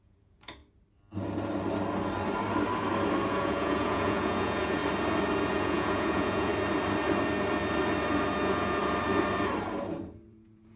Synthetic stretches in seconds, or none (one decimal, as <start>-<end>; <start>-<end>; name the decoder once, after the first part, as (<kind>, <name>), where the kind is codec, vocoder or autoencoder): 0.0-0.6 (vocoder, Vocos); 3.3-4.8; 5.5-6.5; 8.3-8.8; 10.0-10.8